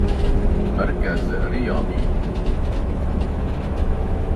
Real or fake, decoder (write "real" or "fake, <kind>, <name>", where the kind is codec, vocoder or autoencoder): fake, autoencoder, DAC-VAE